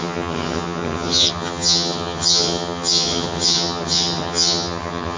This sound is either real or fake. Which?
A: fake